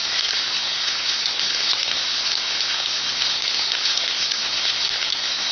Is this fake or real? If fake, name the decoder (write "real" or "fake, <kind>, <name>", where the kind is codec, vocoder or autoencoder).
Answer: fake, codec, SNAC